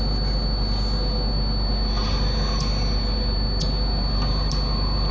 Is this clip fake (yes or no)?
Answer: no